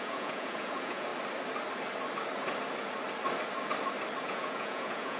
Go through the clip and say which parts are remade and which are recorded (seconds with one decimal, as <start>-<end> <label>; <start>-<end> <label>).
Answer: 0.0-1.1 remade; 1.1-4.2 recorded; 4.2-5.2 remade